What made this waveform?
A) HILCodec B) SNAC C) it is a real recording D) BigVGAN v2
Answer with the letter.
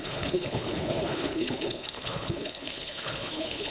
A